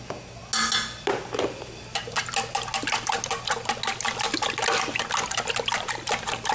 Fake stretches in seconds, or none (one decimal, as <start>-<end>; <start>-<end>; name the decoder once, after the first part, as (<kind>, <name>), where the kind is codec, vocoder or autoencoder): none